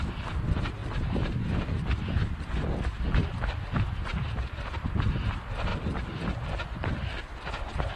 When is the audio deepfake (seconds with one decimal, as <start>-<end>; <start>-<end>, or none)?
none